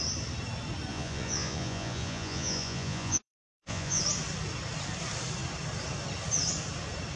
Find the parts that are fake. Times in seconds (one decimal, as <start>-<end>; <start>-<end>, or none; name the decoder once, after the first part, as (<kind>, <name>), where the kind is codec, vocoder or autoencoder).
0.9-4.0 (vocoder, Vocos)